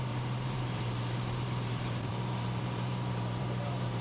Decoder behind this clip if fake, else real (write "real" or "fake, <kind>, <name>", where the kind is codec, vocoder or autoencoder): fake, vocoder, BigVGAN v2